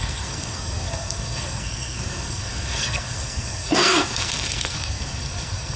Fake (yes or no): yes